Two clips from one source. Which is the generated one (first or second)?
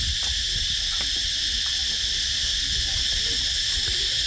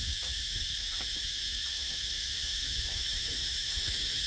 second